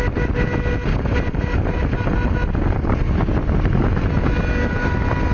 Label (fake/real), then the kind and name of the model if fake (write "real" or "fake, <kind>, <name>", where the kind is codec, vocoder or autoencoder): real